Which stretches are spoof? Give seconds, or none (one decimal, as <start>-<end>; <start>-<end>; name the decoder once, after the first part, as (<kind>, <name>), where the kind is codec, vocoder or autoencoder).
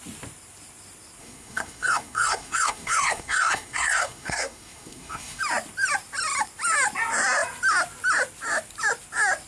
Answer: 1.2-5.4 (codec, SNAC)